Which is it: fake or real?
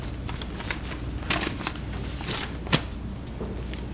real